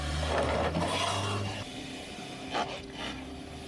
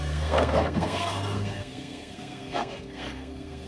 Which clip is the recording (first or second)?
first